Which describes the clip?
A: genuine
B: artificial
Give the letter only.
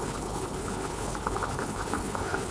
B